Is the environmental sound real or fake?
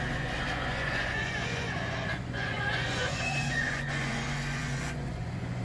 fake